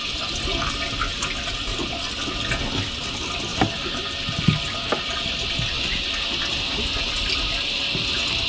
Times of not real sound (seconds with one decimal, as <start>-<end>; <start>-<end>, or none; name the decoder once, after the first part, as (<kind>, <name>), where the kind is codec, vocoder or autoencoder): none

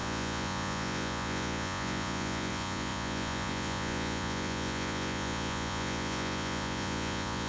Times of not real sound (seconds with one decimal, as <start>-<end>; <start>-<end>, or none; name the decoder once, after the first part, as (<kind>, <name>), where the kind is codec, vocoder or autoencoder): 0.0-7.5 (vocoder, Vocos)

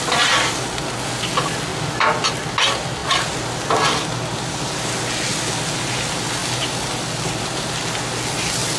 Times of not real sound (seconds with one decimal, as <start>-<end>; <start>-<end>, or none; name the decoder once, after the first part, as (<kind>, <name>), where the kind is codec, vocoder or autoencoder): none